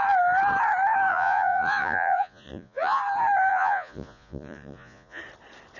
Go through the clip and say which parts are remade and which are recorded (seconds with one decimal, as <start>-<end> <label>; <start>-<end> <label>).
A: 0.0-1.1 recorded; 1.1-3.0 remade; 3.0-3.5 recorded; 3.5-5.2 remade; 5.2-5.8 recorded